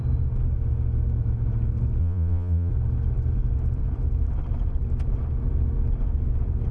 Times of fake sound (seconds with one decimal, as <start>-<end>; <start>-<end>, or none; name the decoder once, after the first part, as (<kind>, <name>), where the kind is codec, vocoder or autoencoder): 2.0-2.7 (vocoder, Vocos)